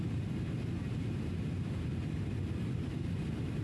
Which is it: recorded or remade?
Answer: recorded